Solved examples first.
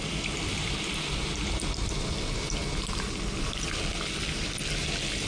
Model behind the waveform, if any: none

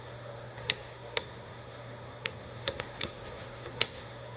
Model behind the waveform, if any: codec, SNAC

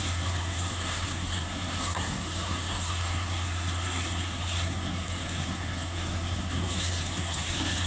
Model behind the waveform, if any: codec, SNAC